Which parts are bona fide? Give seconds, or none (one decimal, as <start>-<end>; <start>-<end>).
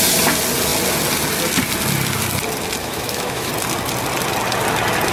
0.0-2.8; 3.5-5.1